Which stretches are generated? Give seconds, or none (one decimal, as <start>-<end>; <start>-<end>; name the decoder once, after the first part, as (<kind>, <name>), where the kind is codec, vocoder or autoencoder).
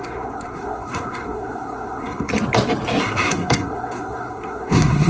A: 0.0-2.3 (codec, SNAC); 3.0-5.1